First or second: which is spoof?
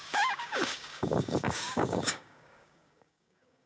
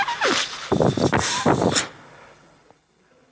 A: first